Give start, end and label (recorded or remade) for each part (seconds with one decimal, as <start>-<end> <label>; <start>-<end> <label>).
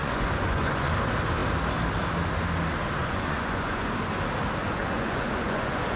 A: 0.0-0.9 remade; 0.9-3.0 recorded; 3.0-3.9 remade; 3.9-4.6 recorded; 4.6-6.0 remade